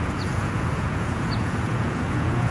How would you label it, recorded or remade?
remade